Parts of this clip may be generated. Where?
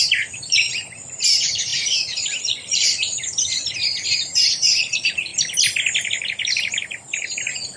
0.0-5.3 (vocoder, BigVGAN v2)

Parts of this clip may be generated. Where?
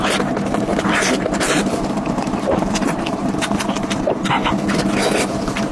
0.7-4.1 (vocoder, BigVGAN v2)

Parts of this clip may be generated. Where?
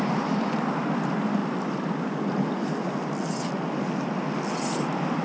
none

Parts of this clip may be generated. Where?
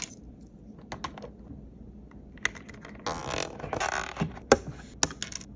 none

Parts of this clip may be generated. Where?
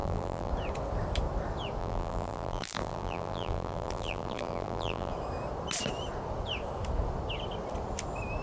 0.0-0.5 (vocoder, BigVGAN v2); 1.8-5.1